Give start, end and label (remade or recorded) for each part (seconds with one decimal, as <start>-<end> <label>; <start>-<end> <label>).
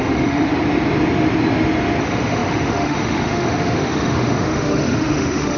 0.0-0.5 remade; 0.5-2.0 recorded; 2.0-5.6 remade